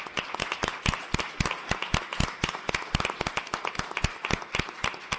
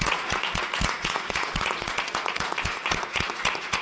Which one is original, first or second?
first